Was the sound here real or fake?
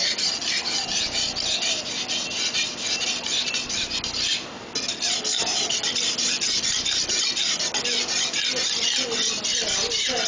real